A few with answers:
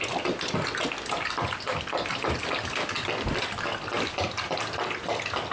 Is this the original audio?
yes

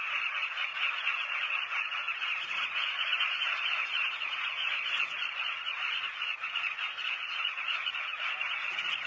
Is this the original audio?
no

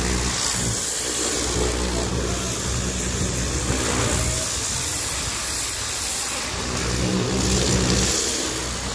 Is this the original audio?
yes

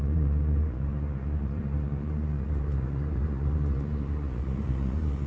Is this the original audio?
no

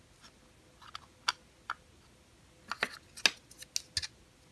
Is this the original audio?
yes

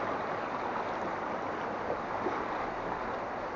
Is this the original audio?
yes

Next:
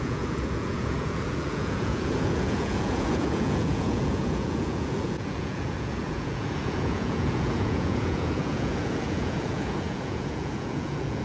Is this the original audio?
no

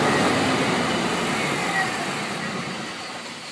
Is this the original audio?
yes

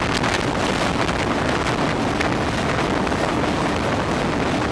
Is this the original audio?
yes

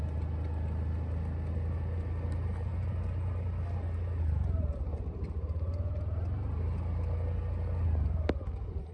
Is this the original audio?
yes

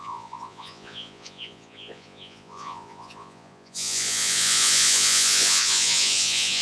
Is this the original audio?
no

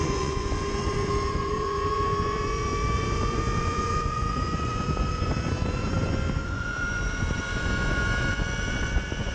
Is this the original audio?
no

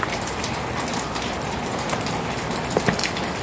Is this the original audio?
yes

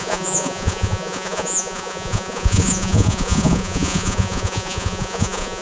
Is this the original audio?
no